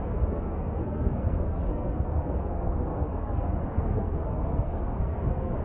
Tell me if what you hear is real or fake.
fake